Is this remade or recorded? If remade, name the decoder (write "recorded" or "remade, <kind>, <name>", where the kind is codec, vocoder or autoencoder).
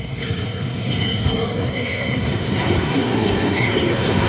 remade, codec, SNAC